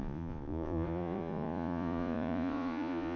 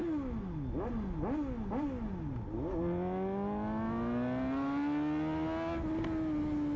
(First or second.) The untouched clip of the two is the second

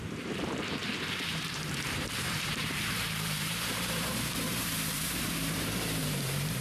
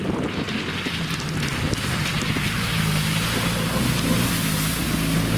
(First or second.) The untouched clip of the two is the second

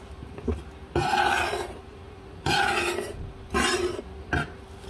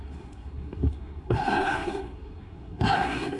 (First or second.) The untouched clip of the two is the first